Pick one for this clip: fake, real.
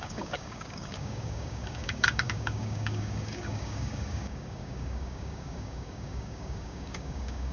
fake